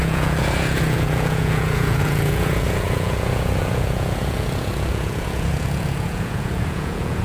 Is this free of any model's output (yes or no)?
no